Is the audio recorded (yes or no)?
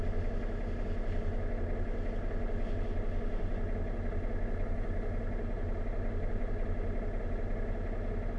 yes